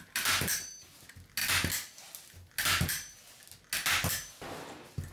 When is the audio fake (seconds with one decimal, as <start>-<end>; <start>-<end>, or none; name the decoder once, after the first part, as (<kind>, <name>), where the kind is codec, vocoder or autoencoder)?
none